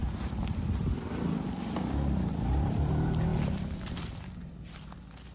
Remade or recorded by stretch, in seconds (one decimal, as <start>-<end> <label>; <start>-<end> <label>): 0.0-2.9 remade; 2.9-3.3 recorded; 3.3-3.9 remade; 3.9-5.3 recorded